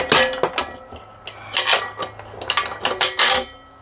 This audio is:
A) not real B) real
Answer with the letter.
B